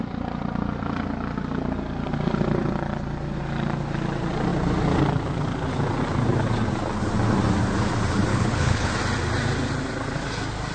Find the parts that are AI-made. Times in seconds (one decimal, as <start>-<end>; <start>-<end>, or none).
8.3-8.9